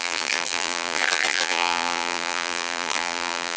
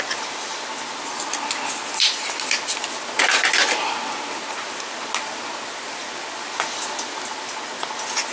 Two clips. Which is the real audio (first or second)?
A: second